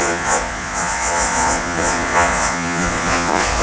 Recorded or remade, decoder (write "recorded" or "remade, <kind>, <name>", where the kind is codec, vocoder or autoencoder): remade, vocoder, Vocos